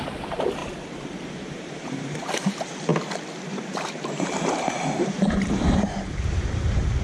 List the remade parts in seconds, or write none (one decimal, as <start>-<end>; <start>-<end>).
0.0-2.9; 3.6-7.0